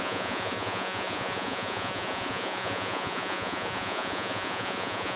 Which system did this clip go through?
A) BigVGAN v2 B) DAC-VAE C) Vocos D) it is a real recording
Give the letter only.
C